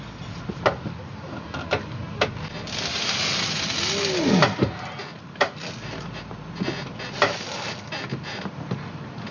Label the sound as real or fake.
real